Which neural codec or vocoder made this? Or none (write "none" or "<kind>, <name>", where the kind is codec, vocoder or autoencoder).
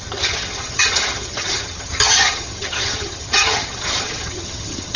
vocoder, HiFi-GAN